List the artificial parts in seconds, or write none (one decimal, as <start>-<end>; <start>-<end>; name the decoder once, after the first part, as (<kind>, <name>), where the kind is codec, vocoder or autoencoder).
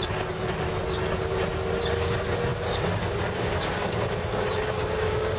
1.9-5.4 (codec, DAC)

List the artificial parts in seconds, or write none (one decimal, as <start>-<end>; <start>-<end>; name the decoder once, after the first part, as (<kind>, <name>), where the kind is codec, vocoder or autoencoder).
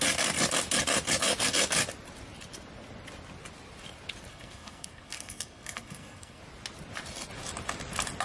4.3-6.4 (codec, SNAC)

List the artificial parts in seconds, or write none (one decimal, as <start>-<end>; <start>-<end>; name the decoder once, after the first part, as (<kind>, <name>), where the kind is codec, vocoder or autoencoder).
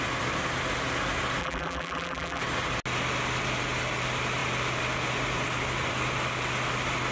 1.4-2.4 (vocoder, BigVGAN v2)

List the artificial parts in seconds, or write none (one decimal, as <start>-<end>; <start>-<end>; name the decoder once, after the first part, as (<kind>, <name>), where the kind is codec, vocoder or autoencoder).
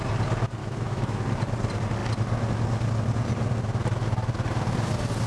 0.6-1.2 (autoencoder, DAC-VAE)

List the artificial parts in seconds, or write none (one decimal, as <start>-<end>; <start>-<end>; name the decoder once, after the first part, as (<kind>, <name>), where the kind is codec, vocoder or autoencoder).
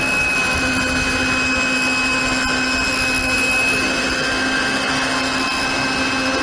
none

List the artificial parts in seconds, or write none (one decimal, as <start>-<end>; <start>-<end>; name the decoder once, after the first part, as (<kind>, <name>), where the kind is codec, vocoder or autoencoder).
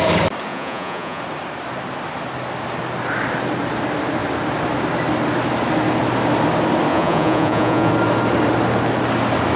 0.5-1.2 (vocoder, Vocos); 6.9-7.9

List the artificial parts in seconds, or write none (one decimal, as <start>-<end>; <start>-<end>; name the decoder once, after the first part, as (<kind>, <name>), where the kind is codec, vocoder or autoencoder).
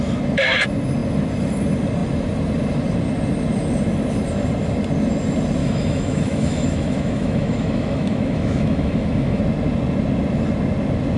5.6-9.4 (autoencoder, DAC-VAE)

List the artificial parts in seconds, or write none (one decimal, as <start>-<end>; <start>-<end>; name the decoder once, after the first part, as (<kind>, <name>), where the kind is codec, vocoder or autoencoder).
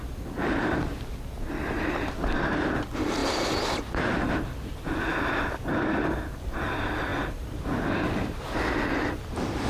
none